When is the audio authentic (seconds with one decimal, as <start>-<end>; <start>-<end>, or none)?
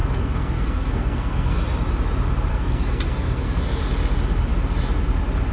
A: 1.6-2.5; 3.6-5.5